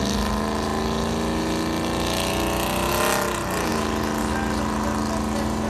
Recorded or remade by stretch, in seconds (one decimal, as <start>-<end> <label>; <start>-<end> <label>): 0.0-5.7 recorded